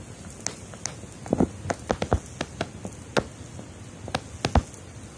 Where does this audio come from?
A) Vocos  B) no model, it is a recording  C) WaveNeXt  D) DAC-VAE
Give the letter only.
B